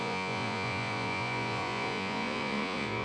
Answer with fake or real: fake